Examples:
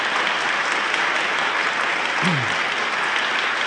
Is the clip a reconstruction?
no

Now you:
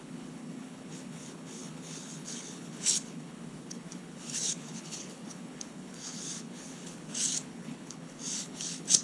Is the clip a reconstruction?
yes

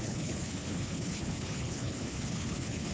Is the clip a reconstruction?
yes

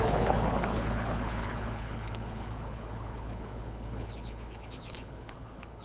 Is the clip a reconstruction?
yes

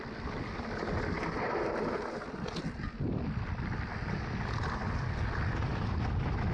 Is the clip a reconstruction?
no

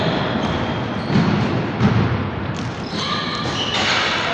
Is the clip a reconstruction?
no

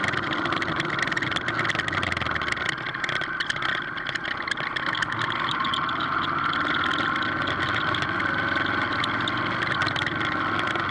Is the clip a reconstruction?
no